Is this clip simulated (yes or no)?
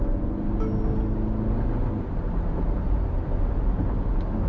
no